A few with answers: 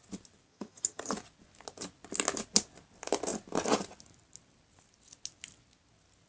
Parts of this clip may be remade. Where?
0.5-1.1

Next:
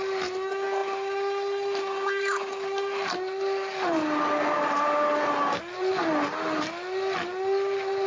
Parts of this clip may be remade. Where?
none

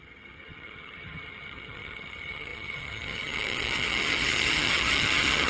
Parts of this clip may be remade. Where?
0.0-5.5